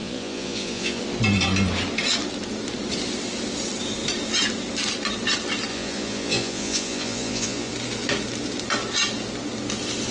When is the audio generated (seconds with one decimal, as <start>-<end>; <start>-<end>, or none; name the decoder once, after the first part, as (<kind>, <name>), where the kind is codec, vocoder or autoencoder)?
0.0-1.0 (vocoder, Vocos); 5.7-7.7